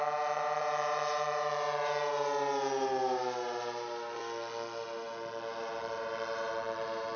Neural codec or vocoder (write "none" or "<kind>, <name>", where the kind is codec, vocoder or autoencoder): none